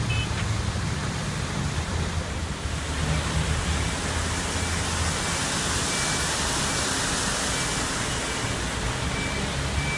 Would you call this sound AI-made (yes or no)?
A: no